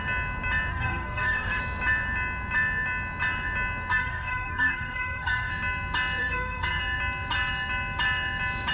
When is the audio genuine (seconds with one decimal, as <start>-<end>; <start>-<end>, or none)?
0.0-0.7; 1.6-3.9; 5.5-6.2; 6.8-8.7